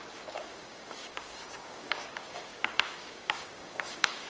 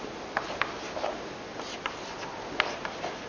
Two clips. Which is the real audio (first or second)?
second